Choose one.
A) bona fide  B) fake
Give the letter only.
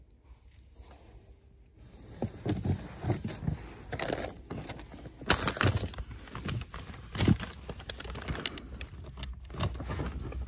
A